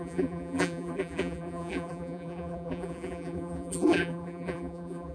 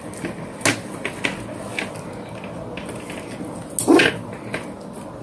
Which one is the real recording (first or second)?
second